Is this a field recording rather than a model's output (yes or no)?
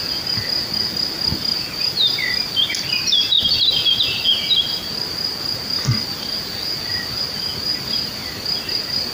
yes